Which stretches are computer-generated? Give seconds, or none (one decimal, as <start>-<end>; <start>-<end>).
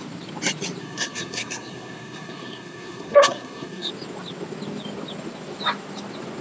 0.8-3.9